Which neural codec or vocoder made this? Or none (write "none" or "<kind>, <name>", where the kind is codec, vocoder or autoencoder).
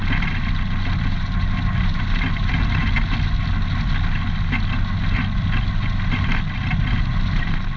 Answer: none